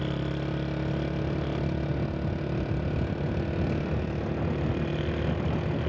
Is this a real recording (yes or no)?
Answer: yes